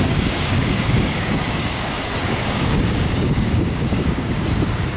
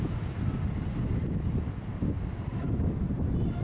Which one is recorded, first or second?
second